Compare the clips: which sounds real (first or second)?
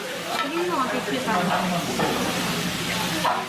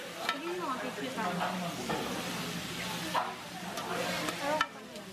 second